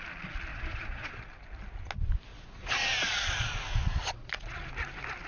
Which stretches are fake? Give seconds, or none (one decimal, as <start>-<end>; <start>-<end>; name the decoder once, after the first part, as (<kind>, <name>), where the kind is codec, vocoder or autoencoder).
0.5-1.2 (vocoder, Vocos); 2.3-4.7